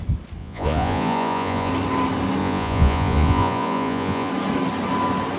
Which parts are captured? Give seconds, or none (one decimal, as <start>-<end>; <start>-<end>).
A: 0.0-0.4; 1.7-2.4; 4.3-5.4